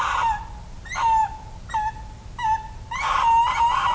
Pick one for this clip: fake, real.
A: real